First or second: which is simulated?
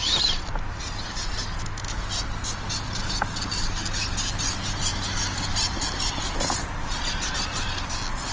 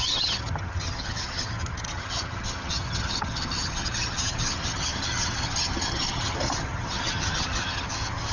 second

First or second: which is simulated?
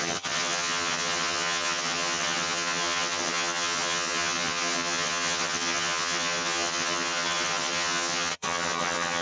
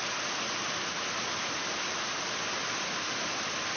first